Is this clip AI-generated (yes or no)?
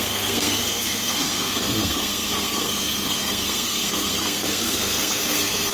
yes